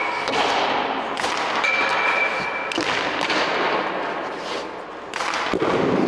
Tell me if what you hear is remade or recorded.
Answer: recorded